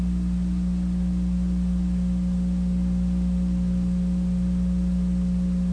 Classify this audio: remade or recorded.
recorded